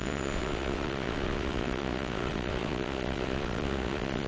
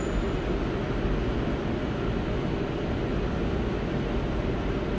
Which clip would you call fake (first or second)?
first